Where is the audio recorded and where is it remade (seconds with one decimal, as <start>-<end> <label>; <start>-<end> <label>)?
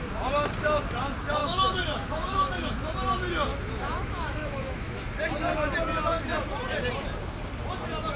0.0-1.4 recorded; 1.4-2.7 remade; 2.7-3.5 recorded; 3.5-5.0 remade; 5.0-8.2 recorded